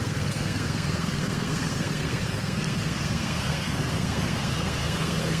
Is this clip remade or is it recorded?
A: remade